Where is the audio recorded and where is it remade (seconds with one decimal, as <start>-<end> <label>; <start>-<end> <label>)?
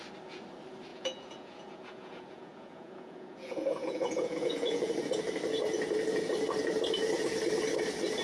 0.0-0.9 recorded; 0.9-4.9 remade; 4.9-8.2 recorded